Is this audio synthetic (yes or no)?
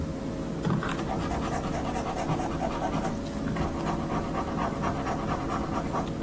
no